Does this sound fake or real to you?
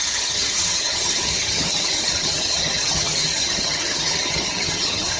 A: fake